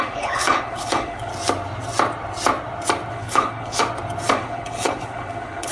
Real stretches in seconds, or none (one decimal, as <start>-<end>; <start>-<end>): 1.3-3.1; 3.8-4.3